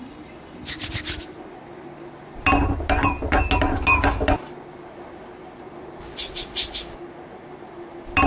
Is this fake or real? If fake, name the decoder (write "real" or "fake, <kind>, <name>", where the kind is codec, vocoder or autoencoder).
real